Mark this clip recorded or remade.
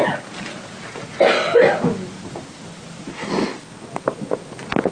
recorded